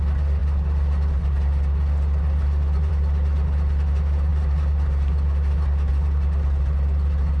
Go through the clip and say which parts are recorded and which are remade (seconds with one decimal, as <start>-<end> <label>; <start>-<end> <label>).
0.0-7.4 recorded